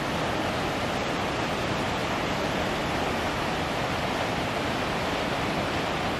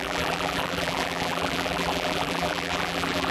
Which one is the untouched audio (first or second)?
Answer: first